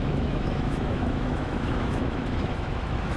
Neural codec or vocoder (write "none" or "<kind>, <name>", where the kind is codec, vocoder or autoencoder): autoencoder, DAC-VAE